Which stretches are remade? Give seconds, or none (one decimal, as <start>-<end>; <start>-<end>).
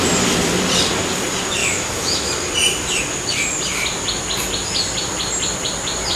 1.6-2.3